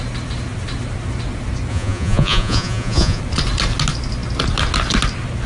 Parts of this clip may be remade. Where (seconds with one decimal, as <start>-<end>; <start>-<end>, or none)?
1.7-3.2